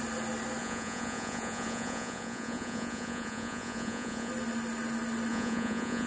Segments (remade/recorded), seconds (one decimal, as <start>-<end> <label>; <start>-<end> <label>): 0.0-0.6 recorded; 0.6-4.3 remade; 4.3-5.3 recorded; 5.3-6.1 remade